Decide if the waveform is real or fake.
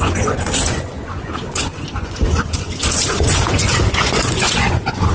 fake